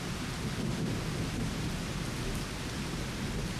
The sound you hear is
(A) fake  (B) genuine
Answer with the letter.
B